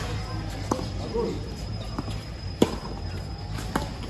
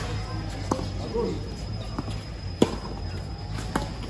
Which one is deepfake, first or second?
first